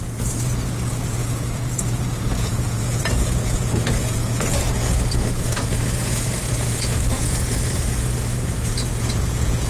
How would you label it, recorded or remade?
remade